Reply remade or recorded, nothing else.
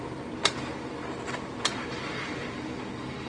remade